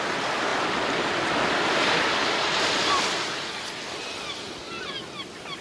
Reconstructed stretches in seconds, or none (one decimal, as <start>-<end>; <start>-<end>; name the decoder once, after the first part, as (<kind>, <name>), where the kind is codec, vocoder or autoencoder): none